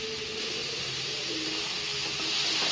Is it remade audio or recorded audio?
recorded